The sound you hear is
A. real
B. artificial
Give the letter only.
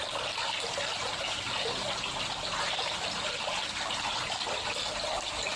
A